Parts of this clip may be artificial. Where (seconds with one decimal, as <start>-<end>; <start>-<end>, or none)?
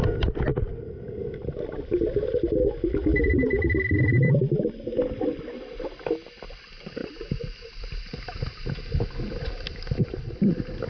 7.0-8.0